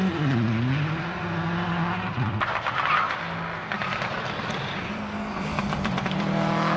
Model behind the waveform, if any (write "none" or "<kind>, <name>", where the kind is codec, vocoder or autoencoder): none